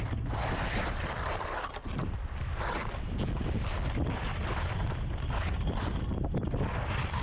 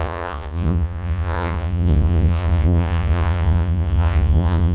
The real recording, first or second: first